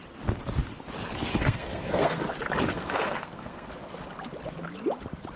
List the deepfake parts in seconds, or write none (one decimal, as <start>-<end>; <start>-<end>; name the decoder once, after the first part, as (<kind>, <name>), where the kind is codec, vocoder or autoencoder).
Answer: 1.3-2.2 (codec, SNAC); 2.7-3.7